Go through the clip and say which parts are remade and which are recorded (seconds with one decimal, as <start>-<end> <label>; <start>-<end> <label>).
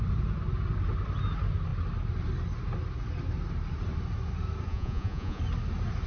0.0-4.7 recorded; 4.7-5.4 remade; 5.4-6.1 recorded